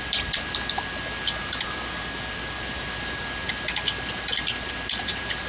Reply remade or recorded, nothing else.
recorded